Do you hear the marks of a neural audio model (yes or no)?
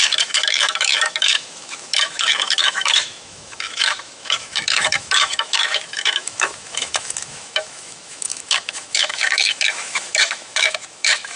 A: yes